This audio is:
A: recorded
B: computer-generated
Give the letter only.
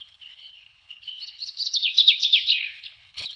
B